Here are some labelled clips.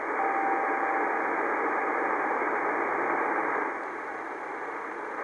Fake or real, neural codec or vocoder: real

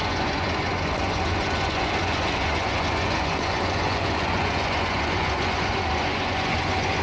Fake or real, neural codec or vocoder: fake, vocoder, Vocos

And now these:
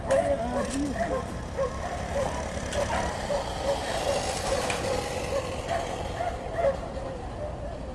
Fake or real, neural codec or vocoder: real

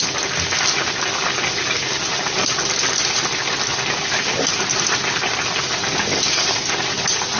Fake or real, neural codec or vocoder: real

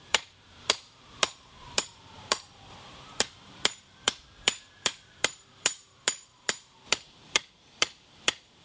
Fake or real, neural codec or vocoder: fake, vocoder, BigVGAN v2